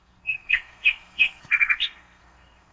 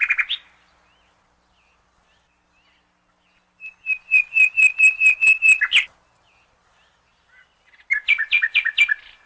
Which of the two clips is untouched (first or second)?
second